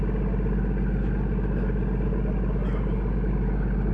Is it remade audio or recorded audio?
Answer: recorded